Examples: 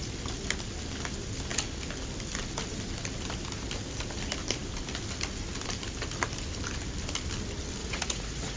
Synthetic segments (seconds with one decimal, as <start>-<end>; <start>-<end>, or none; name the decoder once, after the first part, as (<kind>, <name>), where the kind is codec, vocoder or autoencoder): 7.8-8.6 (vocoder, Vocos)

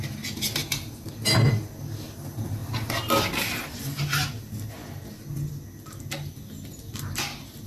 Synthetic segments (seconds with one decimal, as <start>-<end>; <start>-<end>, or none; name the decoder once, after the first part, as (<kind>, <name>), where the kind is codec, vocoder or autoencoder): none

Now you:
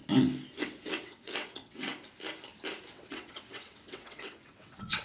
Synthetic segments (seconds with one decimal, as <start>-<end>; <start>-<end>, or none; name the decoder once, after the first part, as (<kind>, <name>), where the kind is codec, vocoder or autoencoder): 0.6-1.9 (vocoder, WaveNeXt); 2.9-5.0

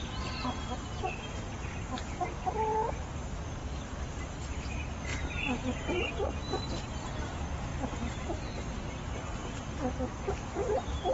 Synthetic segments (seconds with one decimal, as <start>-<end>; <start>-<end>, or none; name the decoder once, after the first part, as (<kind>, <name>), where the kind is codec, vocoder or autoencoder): 3.6-4.1 (vocoder, BigVGAN v2); 7.7-8.9